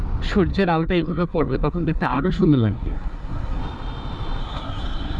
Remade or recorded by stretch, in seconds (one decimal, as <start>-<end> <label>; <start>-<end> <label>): 0.0-0.5 recorded; 0.5-3.6 remade; 3.6-4.4 recorded; 4.4-5.2 remade